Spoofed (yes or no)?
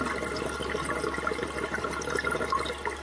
no